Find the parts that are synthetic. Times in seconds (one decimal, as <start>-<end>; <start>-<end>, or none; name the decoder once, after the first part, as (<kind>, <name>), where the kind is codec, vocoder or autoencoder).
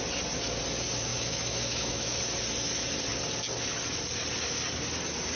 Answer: 1.1-2.2 (autoencoder, DAC-VAE)